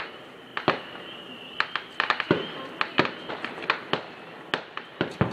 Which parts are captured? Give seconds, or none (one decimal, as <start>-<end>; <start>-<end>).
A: 0.0-5.3